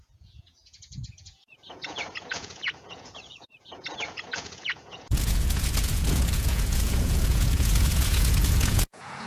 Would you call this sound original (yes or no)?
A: no